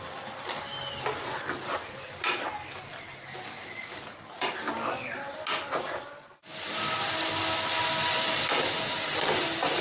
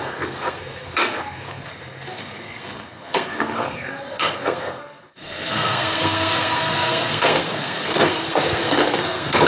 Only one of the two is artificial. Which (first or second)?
second